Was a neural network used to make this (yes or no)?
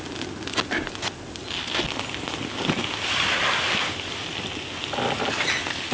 no